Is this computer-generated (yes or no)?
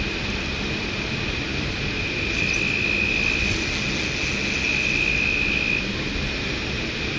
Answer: no